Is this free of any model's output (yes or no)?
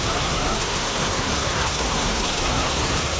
no